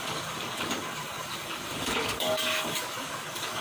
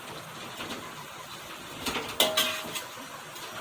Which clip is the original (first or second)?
second